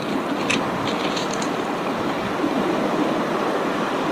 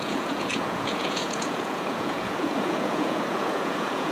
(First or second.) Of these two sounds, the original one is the first